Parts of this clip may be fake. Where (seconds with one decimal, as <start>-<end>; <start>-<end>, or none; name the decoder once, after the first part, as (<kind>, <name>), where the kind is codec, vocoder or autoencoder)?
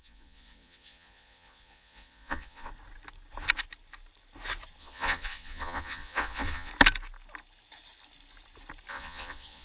0.0-2.7 (vocoder, Vocos); 4.8-6.7; 8.9-9.6